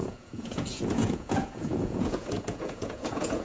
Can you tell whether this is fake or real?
fake